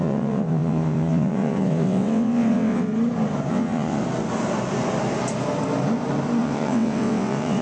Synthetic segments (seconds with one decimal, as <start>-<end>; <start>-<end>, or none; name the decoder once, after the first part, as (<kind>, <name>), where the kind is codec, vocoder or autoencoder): 0.0-2.9 (vocoder, WaveNeXt); 3.5-4.0; 6.4-7.6